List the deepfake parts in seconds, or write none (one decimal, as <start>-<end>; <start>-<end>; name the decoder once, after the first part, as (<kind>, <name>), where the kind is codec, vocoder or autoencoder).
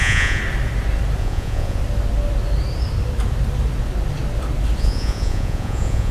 0.0-0.4 (vocoder, Vocos); 1.2-1.8; 4.8-6.1